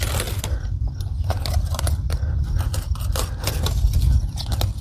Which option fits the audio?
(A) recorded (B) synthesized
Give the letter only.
A